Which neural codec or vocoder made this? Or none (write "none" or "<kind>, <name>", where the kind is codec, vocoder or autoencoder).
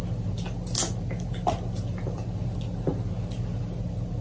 none